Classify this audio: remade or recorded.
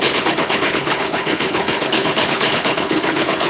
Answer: remade